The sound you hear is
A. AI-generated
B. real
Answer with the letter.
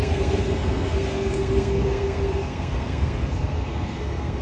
A